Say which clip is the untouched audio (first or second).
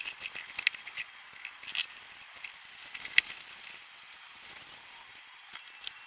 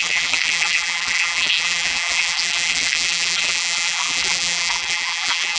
first